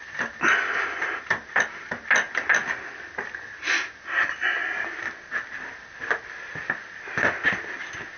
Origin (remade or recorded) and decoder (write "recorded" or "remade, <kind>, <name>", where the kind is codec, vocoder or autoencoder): recorded